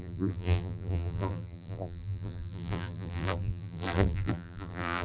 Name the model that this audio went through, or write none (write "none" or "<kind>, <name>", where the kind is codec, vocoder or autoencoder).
vocoder, BigVGAN v2